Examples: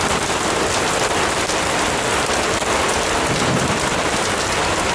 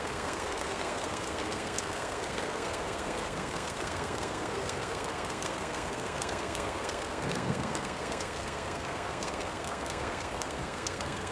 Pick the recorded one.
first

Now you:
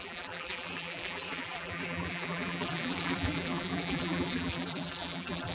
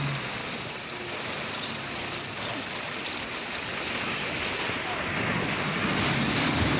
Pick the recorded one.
second